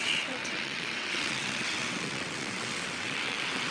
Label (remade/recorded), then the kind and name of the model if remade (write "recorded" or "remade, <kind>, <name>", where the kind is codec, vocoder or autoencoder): remade, vocoder, WaveNeXt